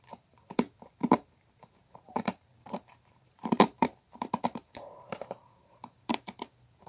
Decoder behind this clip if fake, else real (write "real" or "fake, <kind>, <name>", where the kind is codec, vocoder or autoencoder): fake, vocoder, BigVGAN v2